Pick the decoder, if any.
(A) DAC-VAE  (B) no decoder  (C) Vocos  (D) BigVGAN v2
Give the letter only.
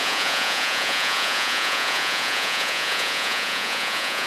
C